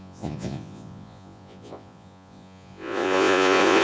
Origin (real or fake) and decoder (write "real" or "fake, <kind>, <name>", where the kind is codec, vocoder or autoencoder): fake, vocoder, Vocos